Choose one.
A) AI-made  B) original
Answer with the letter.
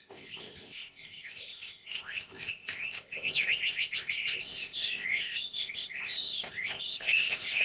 A